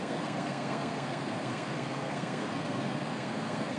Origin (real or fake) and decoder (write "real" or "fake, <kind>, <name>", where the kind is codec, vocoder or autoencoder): fake, codec, SNAC